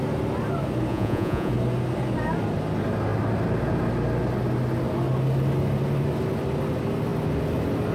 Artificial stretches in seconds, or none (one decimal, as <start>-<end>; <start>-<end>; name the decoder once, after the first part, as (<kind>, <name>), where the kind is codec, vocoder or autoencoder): 0.9-1.5 (vocoder, Vocos)